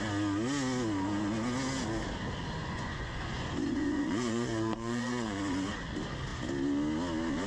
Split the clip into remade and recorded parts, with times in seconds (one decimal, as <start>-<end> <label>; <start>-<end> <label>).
0.0-2.6 recorded; 2.6-5.4 remade; 5.4-7.5 recorded